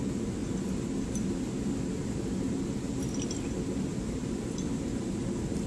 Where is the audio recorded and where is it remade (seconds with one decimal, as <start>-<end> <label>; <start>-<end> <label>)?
0.0-5.7 recorded